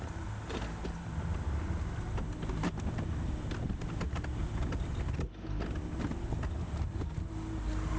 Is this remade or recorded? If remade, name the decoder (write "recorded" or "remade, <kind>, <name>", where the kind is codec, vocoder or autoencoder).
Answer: recorded